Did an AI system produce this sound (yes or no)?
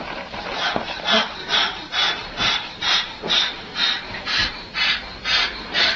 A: yes